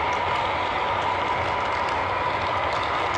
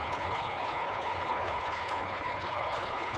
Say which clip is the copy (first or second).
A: second